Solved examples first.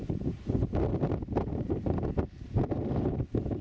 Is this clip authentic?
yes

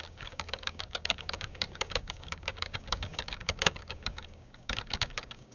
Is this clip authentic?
no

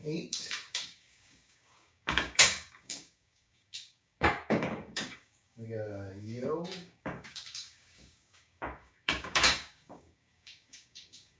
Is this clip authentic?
no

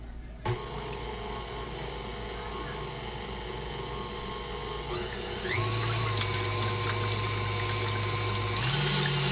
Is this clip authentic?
yes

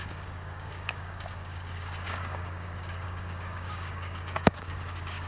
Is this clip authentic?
no